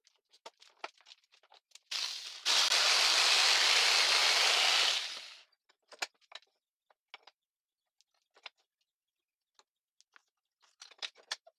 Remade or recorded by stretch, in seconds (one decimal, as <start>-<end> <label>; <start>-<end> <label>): 0.0-10.2 recorded; 10.2-11.6 remade